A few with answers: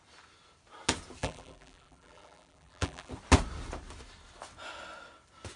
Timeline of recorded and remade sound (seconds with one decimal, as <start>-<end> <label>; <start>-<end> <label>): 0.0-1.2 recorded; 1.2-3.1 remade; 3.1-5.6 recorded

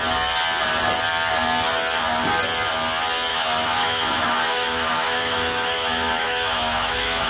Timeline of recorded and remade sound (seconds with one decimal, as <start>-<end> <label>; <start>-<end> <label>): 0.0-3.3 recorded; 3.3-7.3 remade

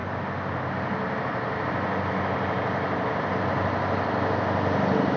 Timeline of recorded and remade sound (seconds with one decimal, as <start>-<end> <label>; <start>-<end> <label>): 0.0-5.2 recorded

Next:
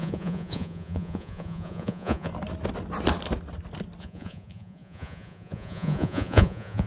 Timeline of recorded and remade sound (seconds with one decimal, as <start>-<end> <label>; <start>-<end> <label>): 0.0-2.3 remade; 2.3-4.0 recorded; 4.0-6.9 remade

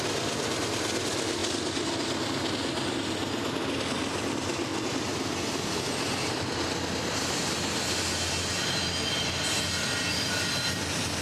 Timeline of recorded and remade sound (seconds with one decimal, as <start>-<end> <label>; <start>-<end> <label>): 0.0-11.2 recorded